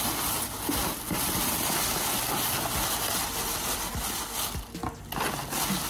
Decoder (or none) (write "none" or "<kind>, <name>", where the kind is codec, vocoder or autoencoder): none